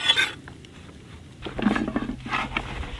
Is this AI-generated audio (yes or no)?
no